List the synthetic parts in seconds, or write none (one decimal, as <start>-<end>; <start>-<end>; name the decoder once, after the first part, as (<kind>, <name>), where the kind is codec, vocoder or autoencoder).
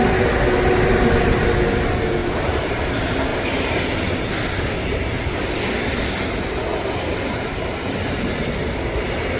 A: 2.2-2.8 (vocoder, BigVGAN v2)